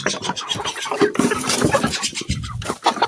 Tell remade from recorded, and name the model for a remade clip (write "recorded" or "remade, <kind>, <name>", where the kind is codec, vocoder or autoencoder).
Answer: remade, vocoder, BigVGAN v2